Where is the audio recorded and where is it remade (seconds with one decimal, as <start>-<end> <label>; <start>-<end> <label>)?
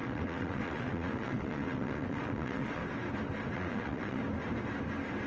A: 0.0-2.8 remade; 2.8-3.5 recorded; 3.5-4.2 remade; 4.2-5.3 recorded